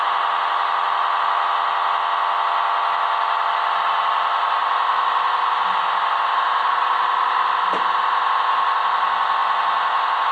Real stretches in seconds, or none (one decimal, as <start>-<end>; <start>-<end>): 0.0-10.3